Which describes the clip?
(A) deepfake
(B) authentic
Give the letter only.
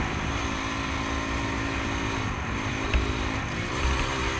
B